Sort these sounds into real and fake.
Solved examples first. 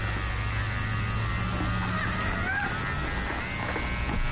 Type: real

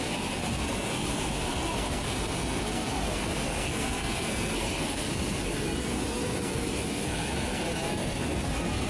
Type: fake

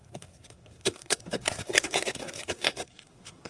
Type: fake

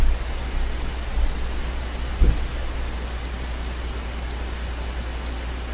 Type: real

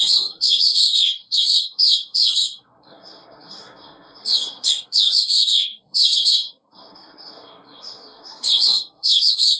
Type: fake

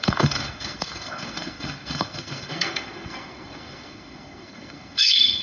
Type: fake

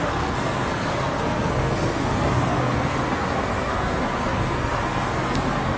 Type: fake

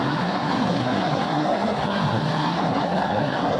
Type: fake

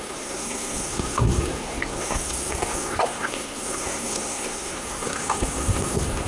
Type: fake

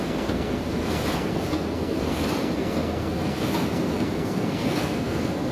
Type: fake